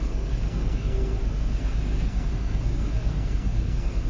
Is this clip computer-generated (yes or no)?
yes